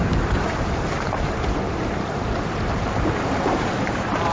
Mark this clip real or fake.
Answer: fake